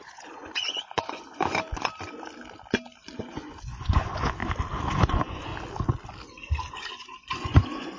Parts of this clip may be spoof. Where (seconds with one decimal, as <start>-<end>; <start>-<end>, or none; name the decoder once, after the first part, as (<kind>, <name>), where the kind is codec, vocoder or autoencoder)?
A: 0.0-1.5 (vocoder, Vocos); 3.2-4.4; 5.0-5.5; 6.7-8.0